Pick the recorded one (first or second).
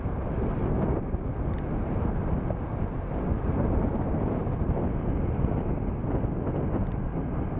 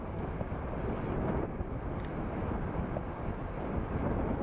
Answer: first